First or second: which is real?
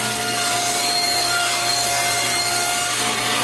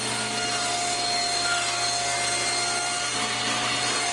second